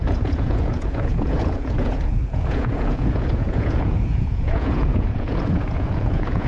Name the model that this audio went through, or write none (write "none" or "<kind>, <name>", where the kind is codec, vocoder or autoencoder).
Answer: vocoder, Vocos